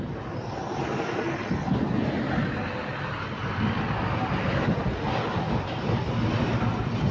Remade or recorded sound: recorded